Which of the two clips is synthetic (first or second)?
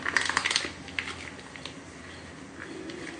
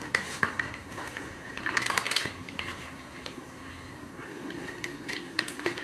second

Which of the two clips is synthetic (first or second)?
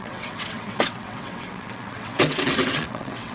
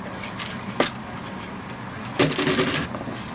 first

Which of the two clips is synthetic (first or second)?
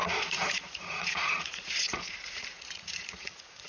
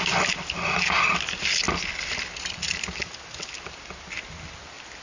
first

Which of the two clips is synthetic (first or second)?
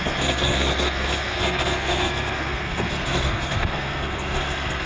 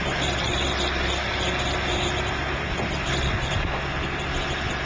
first